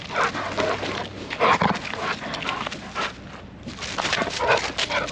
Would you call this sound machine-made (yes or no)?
no